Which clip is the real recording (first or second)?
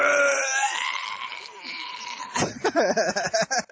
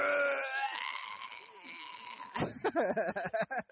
second